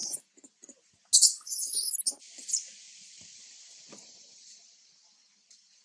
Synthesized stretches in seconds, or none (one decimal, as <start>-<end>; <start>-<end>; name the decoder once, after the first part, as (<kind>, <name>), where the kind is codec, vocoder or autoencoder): 0.0-0.8 (vocoder, Vocos); 3.9-4.6